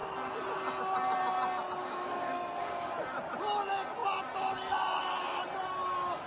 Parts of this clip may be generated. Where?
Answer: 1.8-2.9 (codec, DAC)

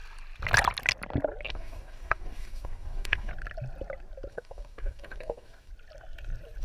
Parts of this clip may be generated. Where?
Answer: 1.5-3.3 (codec, DAC); 4.3-5.7